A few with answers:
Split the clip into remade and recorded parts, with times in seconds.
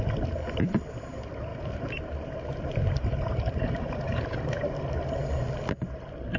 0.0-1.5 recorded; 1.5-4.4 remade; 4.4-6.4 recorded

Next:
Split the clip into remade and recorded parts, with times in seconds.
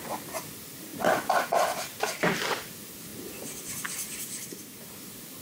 0.0-5.4 recorded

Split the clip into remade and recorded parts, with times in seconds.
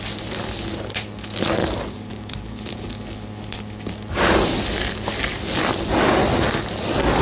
0.0-1.6 recorded; 1.6-2.8 remade; 2.8-7.2 recorded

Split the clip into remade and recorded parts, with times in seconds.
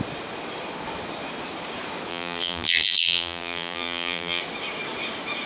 0.0-2.1 recorded; 2.1-4.4 remade; 4.4-5.5 recorded